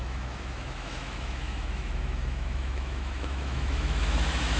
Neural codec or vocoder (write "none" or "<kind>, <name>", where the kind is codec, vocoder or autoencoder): autoencoder, DAC-VAE